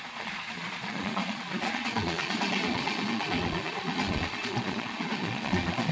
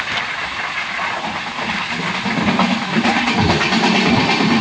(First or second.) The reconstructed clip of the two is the first